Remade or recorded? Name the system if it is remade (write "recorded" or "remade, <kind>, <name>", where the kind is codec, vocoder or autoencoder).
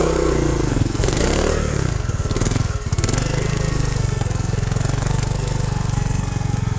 remade, codec, SNAC